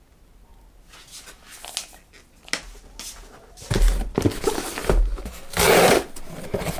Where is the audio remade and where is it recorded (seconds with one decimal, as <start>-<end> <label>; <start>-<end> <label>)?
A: 0.0-6.8 recorded